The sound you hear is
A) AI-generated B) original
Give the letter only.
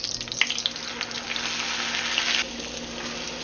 B